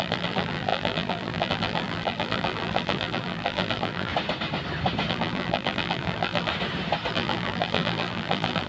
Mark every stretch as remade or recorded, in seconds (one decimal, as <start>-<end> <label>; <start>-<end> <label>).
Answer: 0.0-4.1 remade; 4.1-5.1 recorded; 5.1-6.5 remade; 6.5-7.1 recorded; 7.1-8.7 remade